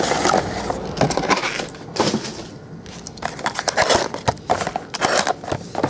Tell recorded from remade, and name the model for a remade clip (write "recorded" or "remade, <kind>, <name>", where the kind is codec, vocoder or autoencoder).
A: recorded